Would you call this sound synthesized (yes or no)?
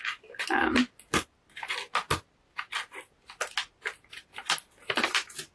no